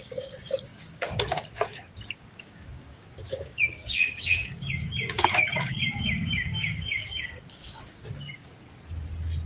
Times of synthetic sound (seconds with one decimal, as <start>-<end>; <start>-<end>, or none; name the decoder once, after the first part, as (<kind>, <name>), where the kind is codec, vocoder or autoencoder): 0.0-8.5 (codec, DAC)